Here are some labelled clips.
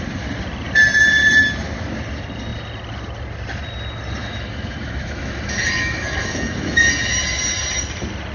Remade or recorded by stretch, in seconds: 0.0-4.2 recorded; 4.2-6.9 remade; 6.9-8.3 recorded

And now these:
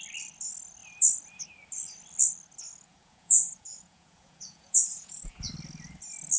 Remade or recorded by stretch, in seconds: 0.0-2.9 recorded; 2.9-5.5 remade; 5.5-6.4 recorded